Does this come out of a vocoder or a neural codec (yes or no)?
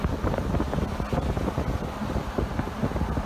no